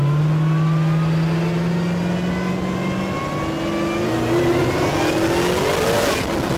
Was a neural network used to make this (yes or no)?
no